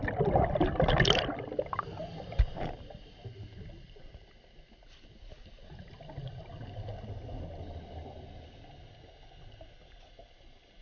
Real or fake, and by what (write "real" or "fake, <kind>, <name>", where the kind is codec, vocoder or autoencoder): real